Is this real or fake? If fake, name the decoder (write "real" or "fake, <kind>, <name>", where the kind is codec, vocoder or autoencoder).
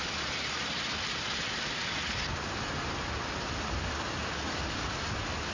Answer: real